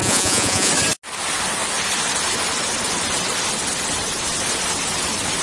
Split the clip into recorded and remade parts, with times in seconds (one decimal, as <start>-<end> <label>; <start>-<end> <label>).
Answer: 0.0-0.7 remade; 0.7-5.4 recorded